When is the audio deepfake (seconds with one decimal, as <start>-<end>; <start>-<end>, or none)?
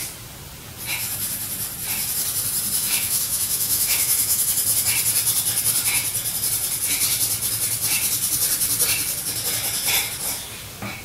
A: 2.8-4.5